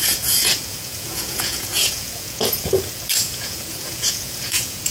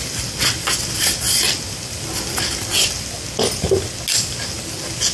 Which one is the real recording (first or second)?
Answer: second